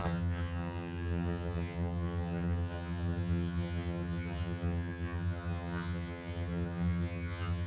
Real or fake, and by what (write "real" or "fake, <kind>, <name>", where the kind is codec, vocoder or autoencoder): fake, vocoder, HiFi-GAN